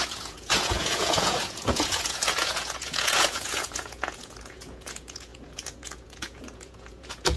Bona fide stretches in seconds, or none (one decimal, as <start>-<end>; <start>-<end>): none